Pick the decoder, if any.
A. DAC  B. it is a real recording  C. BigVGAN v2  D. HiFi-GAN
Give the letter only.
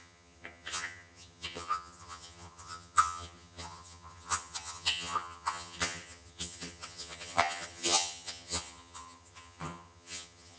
D